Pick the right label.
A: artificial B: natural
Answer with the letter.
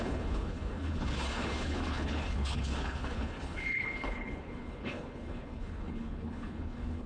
A